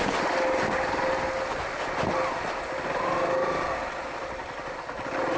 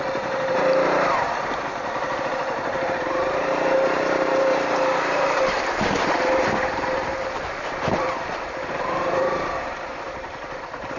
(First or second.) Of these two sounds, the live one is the first